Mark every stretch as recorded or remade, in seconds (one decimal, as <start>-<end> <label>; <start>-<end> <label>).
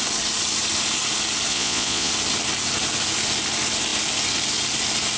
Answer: 0.0-1.5 recorded; 1.5-2.1 remade; 2.1-5.2 recorded